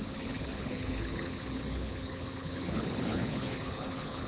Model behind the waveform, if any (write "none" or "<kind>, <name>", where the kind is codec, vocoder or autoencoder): codec, HILCodec